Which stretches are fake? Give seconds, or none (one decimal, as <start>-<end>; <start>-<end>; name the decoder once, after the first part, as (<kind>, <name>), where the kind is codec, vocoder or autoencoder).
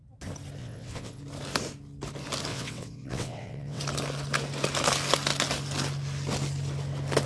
0.6-1.2 (vocoder, WaveNeXt); 2.5-3.8